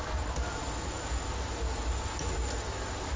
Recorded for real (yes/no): yes